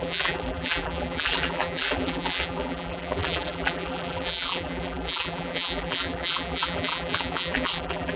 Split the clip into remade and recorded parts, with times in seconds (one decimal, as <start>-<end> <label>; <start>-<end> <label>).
0.0-8.2 remade